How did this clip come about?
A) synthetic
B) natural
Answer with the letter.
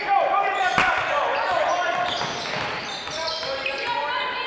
B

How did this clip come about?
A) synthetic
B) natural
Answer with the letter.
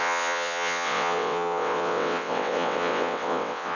A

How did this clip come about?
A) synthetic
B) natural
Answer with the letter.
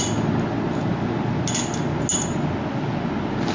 B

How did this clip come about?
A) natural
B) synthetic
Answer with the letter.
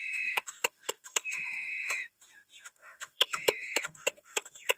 B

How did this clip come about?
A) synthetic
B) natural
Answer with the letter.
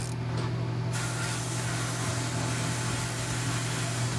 B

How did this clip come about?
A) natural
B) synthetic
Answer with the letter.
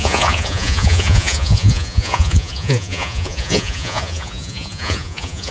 B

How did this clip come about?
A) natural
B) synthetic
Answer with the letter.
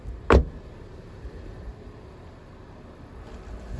A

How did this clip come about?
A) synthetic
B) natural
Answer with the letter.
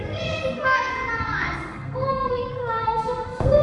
A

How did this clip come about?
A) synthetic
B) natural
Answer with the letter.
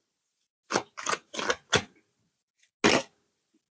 B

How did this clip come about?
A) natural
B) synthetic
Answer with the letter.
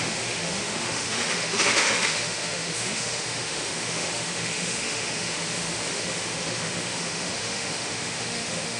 B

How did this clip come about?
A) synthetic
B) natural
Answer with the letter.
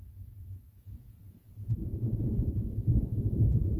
A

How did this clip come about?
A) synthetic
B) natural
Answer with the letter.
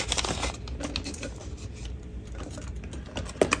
B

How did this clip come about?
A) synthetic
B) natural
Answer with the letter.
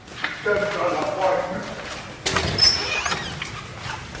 B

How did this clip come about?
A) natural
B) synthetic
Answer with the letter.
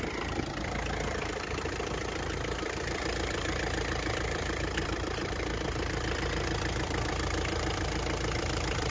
B